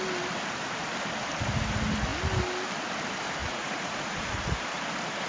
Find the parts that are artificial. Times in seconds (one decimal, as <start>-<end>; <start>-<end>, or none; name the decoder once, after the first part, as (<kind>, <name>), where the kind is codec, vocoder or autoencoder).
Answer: 3.4-4.3 (vocoder, Vocos)